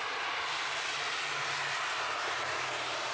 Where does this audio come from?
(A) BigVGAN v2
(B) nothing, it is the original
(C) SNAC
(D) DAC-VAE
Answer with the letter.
B